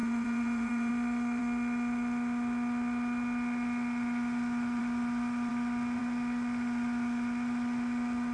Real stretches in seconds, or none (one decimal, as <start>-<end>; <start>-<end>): 0.9-8.3